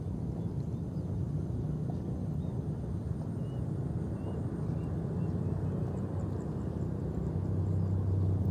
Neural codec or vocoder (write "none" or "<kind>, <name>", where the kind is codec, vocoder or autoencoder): none